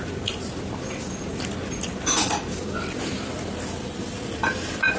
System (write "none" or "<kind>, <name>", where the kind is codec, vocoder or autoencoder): none